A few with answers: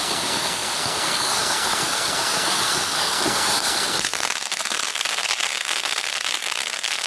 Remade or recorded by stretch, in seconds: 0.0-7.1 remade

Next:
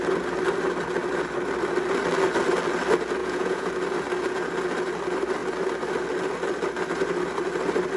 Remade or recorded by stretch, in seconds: 0.0-3.2 recorded; 3.2-3.7 remade; 3.7-8.0 recorded